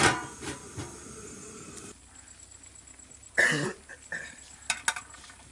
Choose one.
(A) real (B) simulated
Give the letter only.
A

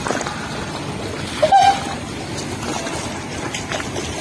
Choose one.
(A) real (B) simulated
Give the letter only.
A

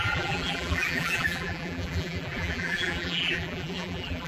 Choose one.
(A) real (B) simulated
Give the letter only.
B